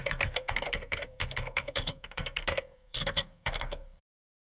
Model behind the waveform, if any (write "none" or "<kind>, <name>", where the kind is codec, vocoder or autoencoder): codec, SNAC